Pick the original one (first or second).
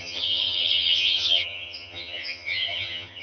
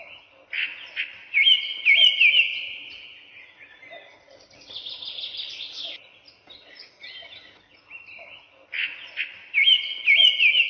second